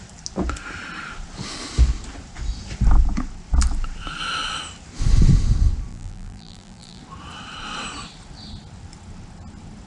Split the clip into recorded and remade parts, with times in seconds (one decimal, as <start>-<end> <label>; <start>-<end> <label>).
0.0-5.9 recorded; 5.9-7.0 remade; 7.0-9.9 recorded